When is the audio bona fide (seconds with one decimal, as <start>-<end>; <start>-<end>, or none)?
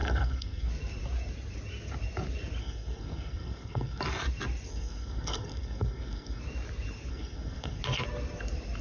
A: 0.7-2.6; 4.0-4.7; 6.4-7.1; 7.8-8.8